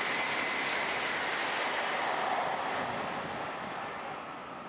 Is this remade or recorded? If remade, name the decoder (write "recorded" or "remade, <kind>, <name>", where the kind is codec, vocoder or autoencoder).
recorded